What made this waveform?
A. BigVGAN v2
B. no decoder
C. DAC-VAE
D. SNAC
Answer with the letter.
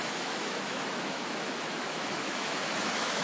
C